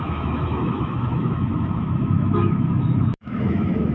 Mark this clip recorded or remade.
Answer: remade